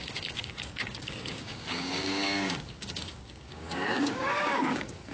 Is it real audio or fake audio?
fake